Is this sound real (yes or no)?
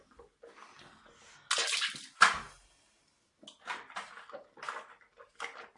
yes